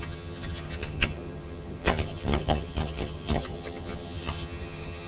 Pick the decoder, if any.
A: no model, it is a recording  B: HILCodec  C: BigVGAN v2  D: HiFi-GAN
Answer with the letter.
D